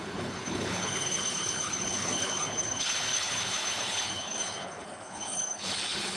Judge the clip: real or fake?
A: fake